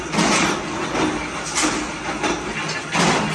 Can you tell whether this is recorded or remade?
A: recorded